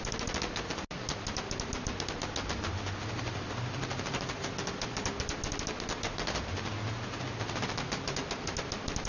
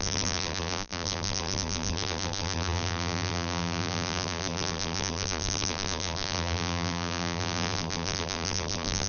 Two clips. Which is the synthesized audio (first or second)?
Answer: second